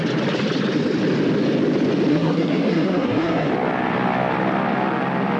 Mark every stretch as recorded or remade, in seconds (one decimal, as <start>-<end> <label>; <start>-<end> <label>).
0.0-2.1 recorded; 2.1-3.5 remade; 3.5-5.4 recorded